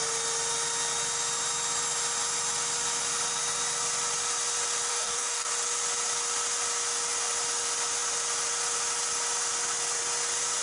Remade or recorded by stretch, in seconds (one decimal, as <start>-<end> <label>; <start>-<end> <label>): 0.0-4.9 recorded; 4.9-5.5 remade; 5.5-10.6 recorded